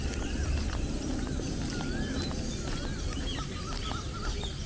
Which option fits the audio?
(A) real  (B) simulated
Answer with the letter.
A